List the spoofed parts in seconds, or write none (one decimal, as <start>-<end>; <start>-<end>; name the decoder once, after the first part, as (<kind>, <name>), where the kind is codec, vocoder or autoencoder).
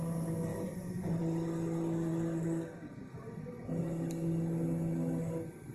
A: none